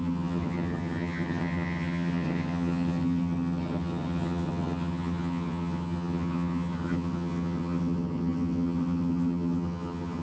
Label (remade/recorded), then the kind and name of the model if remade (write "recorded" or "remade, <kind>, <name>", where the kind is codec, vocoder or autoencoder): remade, vocoder, HiFi-GAN